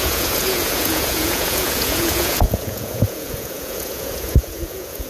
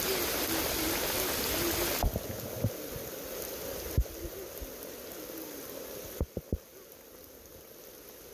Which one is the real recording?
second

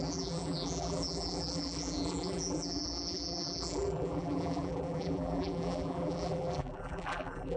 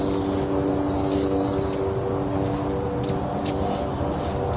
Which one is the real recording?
second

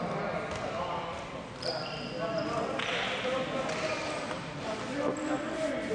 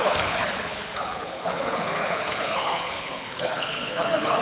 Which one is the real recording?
first